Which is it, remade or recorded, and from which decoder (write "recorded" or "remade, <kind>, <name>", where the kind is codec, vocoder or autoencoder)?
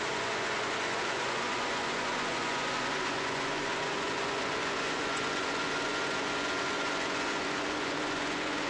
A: remade, vocoder, Vocos